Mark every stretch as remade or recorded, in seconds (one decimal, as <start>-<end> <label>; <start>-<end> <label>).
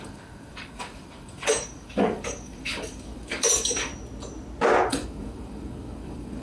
0.0-3.9 remade; 3.9-4.9 recorded; 4.9-6.4 remade